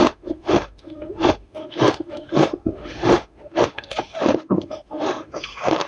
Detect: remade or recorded remade